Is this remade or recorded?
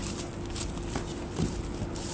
remade